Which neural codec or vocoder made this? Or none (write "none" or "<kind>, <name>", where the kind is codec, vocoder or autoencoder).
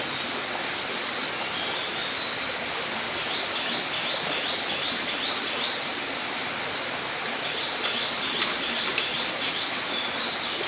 none